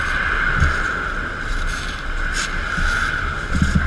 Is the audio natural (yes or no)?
yes